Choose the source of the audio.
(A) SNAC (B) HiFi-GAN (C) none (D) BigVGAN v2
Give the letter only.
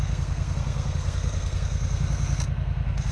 A